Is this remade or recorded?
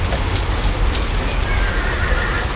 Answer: recorded